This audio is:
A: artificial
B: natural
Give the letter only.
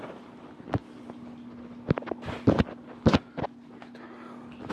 B